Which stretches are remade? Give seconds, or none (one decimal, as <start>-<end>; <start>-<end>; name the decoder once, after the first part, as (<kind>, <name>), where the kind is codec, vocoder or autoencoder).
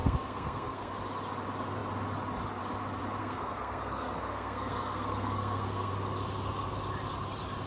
0.0-0.9 (codec, SNAC); 3.2-5.9